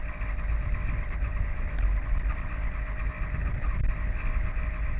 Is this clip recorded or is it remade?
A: recorded